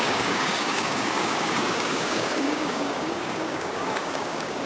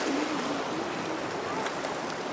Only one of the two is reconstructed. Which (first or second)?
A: first